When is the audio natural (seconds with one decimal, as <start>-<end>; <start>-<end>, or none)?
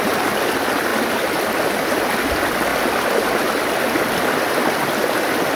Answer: 0.0-5.6